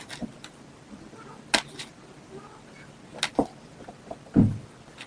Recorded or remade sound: recorded